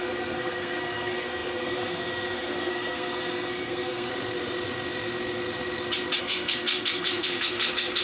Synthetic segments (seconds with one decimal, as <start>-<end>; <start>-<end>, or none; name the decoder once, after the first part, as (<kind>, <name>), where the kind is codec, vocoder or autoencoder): 0.0-4.1 (codec, SNAC); 6.2-8.0